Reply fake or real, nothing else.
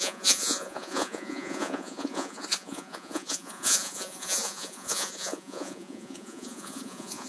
fake